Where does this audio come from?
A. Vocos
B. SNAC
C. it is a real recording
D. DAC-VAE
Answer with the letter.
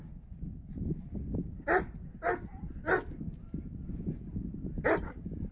C